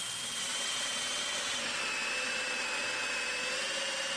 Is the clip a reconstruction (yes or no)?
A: no